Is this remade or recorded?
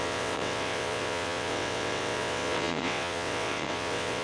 remade